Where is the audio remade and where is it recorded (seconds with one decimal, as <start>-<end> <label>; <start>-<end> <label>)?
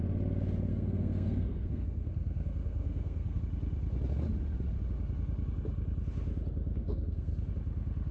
0.0-0.7 recorded; 0.7-3.4 remade; 3.4-6.8 recorded; 6.8-7.5 remade; 7.5-8.1 recorded